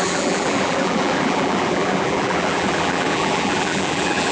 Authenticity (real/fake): fake